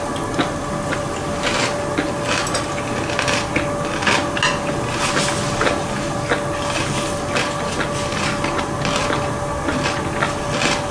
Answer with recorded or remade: recorded